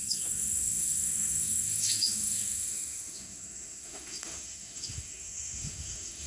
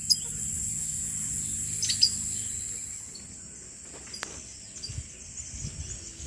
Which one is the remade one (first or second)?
first